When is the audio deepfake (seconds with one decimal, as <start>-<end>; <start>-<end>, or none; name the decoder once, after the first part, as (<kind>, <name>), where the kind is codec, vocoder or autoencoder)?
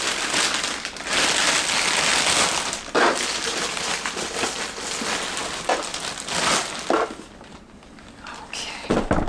5.9-6.5 (vocoder, BigVGAN v2)